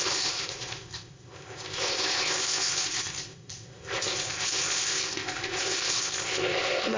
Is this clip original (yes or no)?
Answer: no